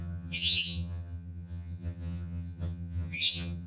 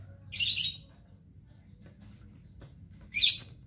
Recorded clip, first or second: second